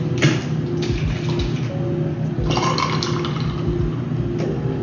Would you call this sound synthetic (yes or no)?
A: no